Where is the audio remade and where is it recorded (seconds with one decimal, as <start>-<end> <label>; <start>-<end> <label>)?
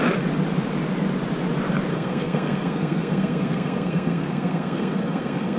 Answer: 0.0-1.9 recorded; 1.9-5.6 remade